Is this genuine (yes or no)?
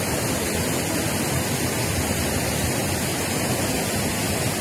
yes